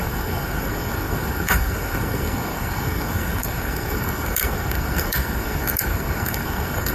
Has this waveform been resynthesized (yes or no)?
yes